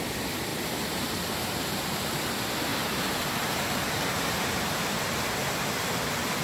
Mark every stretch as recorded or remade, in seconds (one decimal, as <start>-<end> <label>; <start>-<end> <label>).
0.0-0.5 recorded; 0.5-2.1 remade; 2.1-2.7 recorded; 2.7-5.0 remade; 5.0-6.4 recorded